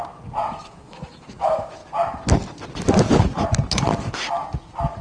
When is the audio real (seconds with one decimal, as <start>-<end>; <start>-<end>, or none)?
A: 0.0-0.5; 1.8-5.0